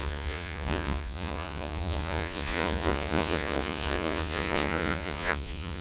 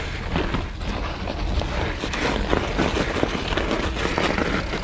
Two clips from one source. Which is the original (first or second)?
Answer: second